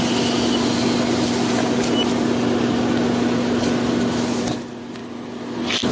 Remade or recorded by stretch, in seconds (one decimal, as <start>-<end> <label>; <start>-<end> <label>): 0.0-5.9 recorded